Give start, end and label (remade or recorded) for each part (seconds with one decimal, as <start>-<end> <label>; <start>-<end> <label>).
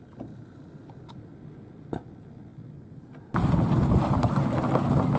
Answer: 0.0-5.2 recorded